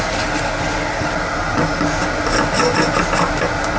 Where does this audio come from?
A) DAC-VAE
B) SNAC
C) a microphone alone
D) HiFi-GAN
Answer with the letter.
C